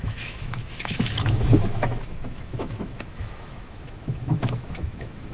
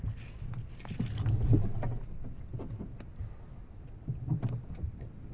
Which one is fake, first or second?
first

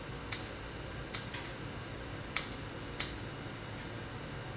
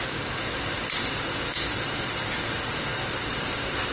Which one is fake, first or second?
second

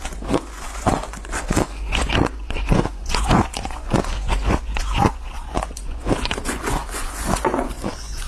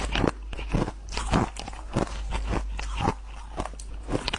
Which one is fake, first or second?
first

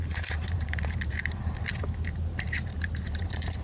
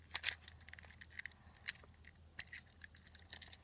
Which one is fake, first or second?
first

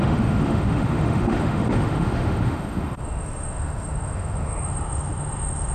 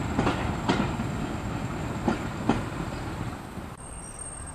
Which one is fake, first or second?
first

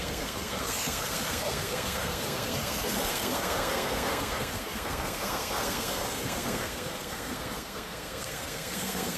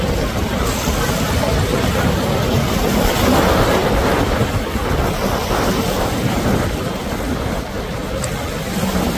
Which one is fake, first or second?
first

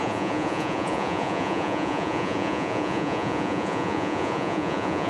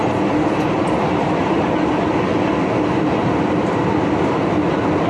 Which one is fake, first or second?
first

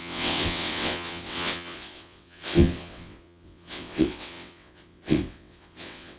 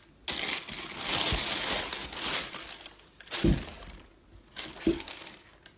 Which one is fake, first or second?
first